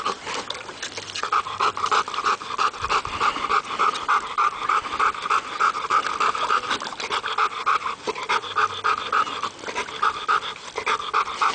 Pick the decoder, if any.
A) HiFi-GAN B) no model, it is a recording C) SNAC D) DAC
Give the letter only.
B